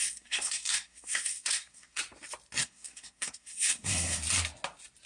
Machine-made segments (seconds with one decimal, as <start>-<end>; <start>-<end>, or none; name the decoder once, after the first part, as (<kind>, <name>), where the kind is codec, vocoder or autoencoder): 0.0-2.0 (codec, SNAC); 2.6-4.2

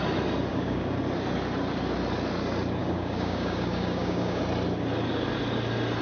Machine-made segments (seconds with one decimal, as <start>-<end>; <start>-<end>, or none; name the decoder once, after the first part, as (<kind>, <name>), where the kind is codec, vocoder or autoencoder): 0.5-1.0 (codec, DAC); 2.8-4.4

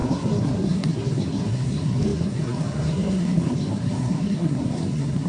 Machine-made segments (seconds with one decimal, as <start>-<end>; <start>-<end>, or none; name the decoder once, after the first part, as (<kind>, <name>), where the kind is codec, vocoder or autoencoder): 0.0-5.3 (codec, SNAC)

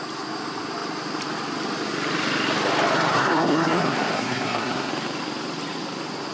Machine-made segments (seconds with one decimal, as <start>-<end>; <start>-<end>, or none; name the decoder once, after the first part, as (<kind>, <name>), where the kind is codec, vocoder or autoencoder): 3.1-4.9 (codec, SNAC)